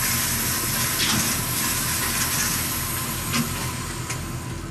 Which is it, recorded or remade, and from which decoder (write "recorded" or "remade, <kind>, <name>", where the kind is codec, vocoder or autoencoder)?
recorded